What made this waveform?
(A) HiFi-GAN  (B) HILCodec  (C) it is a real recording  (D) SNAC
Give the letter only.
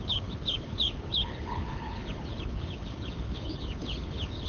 B